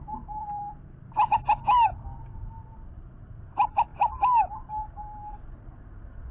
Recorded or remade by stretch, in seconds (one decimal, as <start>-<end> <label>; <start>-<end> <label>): 0.0-0.4 recorded; 0.4-1.4 remade; 1.4-3.9 recorded; 3.9-4.7 remade; 4.7-6.3 recorded